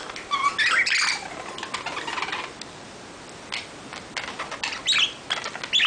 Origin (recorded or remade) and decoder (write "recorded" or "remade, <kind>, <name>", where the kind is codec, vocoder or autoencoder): recorded